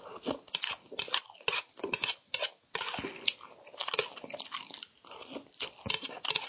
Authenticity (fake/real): real